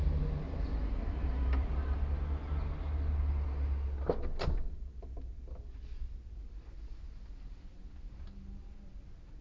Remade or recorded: recorded